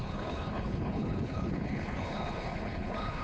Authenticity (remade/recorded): remade